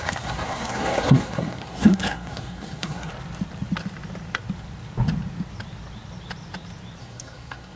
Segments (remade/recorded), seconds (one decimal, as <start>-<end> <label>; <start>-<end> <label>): 0.0-3.1 remade; 3.1-7.0 recorded; 7.0-7.8 remade